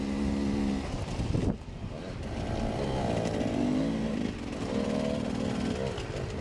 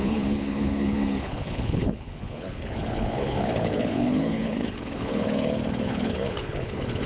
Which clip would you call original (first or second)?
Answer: first